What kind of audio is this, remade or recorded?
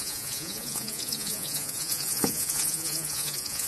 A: remade